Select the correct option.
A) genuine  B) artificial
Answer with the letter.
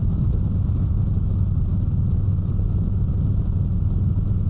A